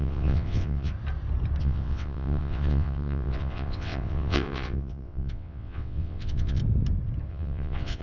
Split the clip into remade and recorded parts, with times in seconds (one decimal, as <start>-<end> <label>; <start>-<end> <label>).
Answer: 0.0-0.9 remade; 0.9-1.6 recorded; 1.6-6.6 remade; 6.6-7.3 recorded; 7.3-8.0 remade